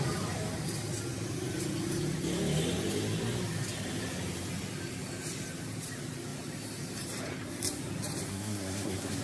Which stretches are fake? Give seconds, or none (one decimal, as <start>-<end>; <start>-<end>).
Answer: 8.3-9.2